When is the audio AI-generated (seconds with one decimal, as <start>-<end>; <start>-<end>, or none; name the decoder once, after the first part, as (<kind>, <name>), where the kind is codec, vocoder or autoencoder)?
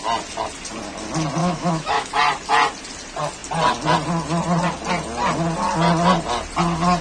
1.4-2.1 (autoencoder, DAC-VAE)